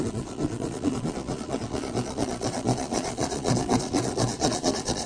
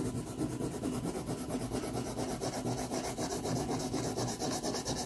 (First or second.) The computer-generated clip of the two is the first